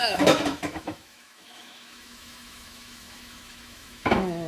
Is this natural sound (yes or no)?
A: no